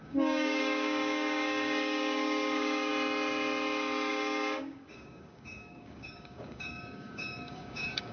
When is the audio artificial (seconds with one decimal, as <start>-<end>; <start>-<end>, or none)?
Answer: 0.0-2.9; 4.1-8.1